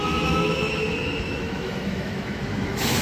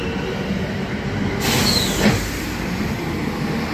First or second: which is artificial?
first